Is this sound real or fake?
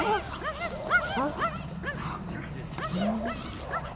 real